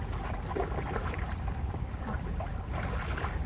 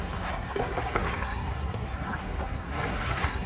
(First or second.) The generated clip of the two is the second